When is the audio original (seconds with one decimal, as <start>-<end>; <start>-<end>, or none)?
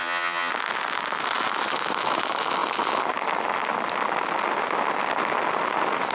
0.5-6.1